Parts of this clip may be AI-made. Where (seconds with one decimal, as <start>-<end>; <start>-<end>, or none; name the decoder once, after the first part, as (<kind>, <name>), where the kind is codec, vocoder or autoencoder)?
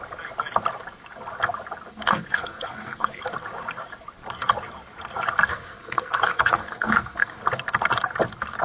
1.9-3.2 (codec, SNAC); 5.5-7.4